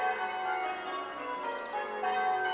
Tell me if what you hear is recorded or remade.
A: recorded